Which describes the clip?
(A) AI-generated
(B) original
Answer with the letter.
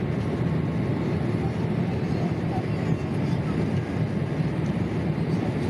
A